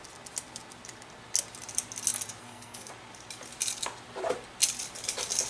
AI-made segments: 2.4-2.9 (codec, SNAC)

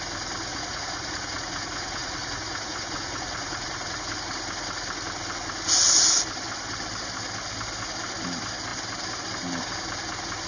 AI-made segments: 0.5-4.0 (vocoder, Vocos)

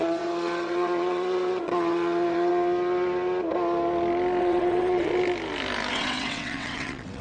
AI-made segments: 0.0-2.5 (vocoder, WaveNeXt); 4.4-5.1; 5.9-7.2